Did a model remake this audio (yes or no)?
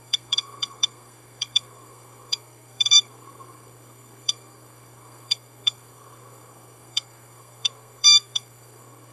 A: yes